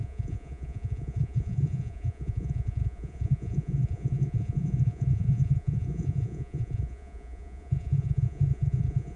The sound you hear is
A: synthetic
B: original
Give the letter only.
A